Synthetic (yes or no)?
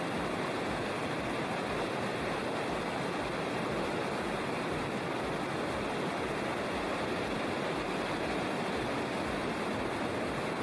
no